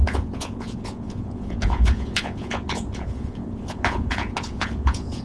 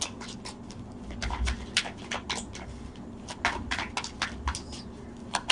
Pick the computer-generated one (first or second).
first